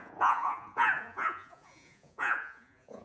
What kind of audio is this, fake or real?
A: fake